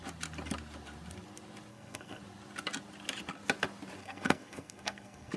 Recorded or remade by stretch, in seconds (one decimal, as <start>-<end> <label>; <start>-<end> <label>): 0.0-1.7 recorded; 1.7-2.2 remade; 2.2-4.0 recorded; 4.0-5.4 remade